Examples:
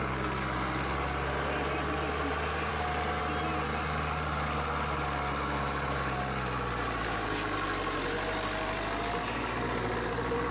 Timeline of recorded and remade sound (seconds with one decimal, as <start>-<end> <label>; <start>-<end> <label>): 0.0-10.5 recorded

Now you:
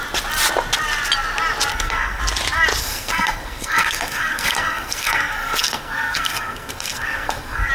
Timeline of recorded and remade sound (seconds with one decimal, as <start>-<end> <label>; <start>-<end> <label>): 0.0-1.7 recorded; 1.7-2.2 remade; 2.2-2.8 recorded; 2.8-7.7 remade

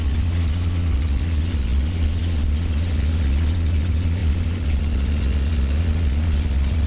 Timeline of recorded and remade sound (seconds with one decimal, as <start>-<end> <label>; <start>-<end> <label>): 0.0-6.9 remade